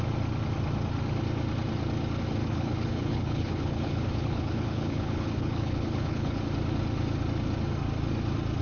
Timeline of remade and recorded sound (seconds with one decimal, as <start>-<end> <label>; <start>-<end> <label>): 0.0-2.4 recorded; 2.4-6.4 remade; 6.4-8.6 recorded